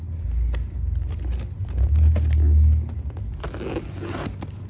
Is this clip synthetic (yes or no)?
no